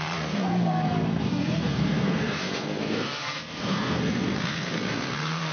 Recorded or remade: remade